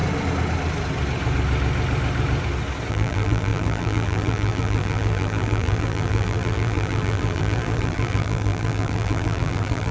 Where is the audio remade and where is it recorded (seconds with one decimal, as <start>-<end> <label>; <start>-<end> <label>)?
0.0-2.9 recorded; 2.9-9.9 remade